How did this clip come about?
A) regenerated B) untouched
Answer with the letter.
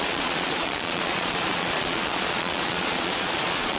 A